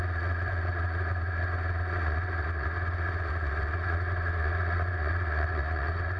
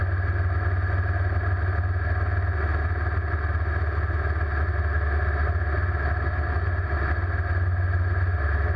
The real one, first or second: second